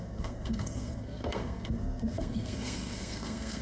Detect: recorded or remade remade